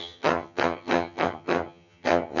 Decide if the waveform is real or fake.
fake